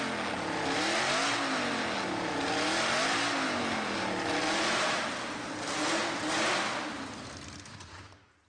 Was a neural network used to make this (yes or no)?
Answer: no